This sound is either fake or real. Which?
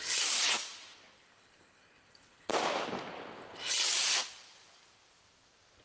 real